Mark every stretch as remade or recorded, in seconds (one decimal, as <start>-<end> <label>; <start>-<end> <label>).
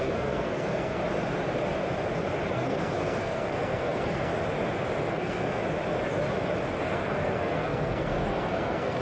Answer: 0.0-1.0 remade; 1.0-2.5 recorded; 2.5-4.3 remade; 4.3-5.1 recorded; 5.1-5.6 remade; 5.6-6.9 recorded; 6.9-9.0 remade